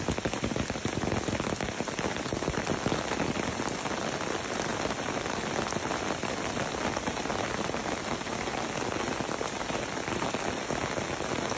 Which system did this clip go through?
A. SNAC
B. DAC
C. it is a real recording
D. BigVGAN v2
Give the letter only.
C